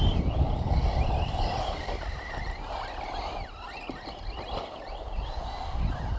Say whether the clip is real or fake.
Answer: real